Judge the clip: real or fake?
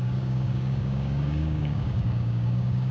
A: fake